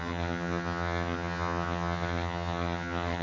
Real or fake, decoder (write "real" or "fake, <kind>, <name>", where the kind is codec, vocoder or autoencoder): fake, vocoder, HiFi-GAN